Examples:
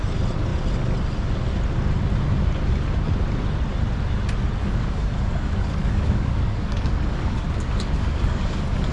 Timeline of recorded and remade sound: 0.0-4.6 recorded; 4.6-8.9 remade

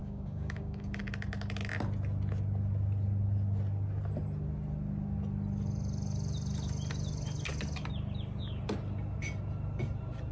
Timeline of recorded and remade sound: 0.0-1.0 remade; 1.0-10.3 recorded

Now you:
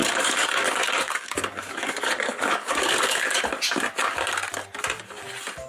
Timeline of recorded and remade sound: 0.0-3.4 remade; 3.4-5.7 recorded

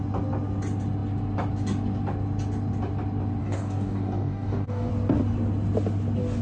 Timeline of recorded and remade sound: 0.0-3.4 recorded; 3.4-4.9 remade; 4.9-6.4 recorded

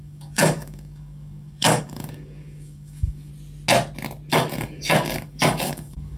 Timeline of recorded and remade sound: 0.0-3.3 remade; 3.3-4.3 recorded; 4.3-6.2 remade

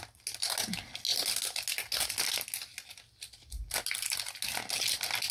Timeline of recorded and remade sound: 0.0-5.3 recorded

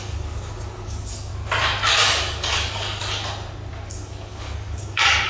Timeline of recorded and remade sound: 0.0-1.3 remade; 1.3-1.9 recorded; 1.9-3.0 remade; 3.0-3.7 recorded; 3.7-5.3 remade